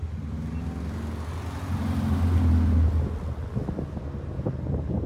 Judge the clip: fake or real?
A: real